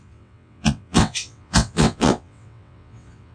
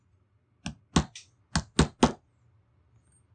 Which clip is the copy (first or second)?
first